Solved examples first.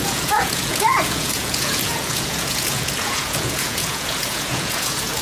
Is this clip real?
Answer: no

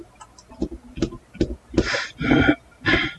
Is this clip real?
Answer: yes